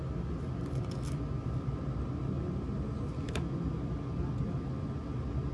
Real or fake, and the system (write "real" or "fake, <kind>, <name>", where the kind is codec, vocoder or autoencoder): real